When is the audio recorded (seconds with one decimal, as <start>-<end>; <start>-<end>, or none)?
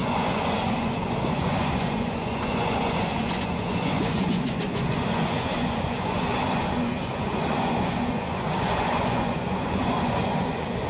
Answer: none